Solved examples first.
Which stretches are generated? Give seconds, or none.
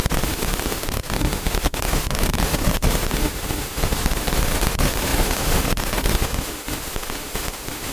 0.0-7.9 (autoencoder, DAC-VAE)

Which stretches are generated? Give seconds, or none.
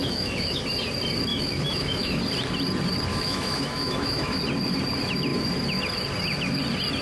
0.0-0.6 (autoencoder, DAC-VAE); 1.3-2.2; 3.1-4.4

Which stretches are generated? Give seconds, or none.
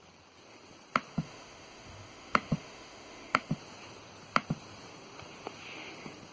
1.1-3.6 (autoencoder, DAC-VAE)